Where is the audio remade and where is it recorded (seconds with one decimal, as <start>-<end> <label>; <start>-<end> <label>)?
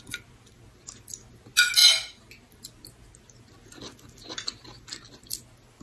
0.0-5.8 recorded